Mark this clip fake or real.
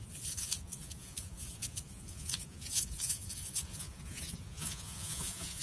fake